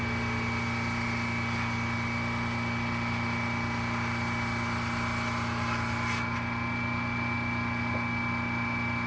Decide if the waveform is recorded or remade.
recorded